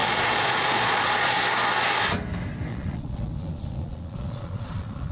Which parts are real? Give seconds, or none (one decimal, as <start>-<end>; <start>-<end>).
1.4-2.7